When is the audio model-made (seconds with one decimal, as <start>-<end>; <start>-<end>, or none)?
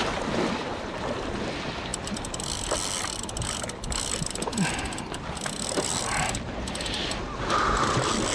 none